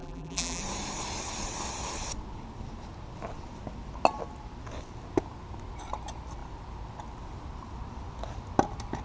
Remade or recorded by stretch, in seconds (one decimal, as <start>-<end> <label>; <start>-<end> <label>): 0.0-0.6 remade; 0.6-9.0 recorded